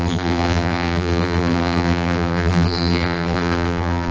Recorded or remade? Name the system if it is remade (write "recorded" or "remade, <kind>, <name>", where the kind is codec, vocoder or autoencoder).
remade, vocoder, BigVGAN v2